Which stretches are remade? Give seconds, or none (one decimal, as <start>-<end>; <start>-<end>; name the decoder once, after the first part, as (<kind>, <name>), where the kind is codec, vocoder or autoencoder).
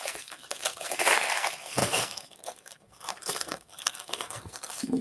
0.0-5.0 (codec, SNAC)